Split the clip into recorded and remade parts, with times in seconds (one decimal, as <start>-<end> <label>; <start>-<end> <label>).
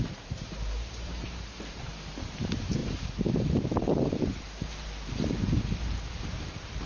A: 0.0-6.9 remade